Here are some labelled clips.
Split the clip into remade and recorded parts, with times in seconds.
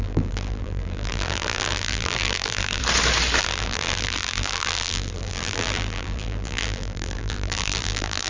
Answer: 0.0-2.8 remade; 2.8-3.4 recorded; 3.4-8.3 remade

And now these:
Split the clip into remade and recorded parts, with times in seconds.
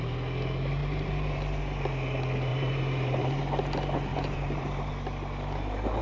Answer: 0.0-0.8 recorded; 0.8-1.6 remade; 1.6-2.5 recorded; 2.5-3.4 remade; 3.4-4.1 recorded; 4.1-4.9 remade; 4.9-6.0 recorded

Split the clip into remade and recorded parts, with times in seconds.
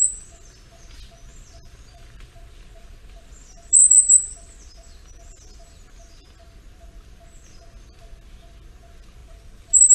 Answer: 0.0-1.3 recorded; 1.3-5.9 remade; 5.9-9.2 recorded; 9.2-9.9 remade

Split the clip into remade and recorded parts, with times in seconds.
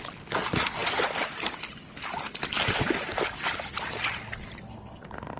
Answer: 0.0-5.4 recorded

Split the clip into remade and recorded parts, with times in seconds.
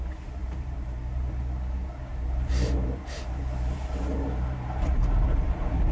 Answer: 0.0-0.4 recorded; 0.4-1.4 remade; 1.4-2.1 recorded; 2.1-5.9 remade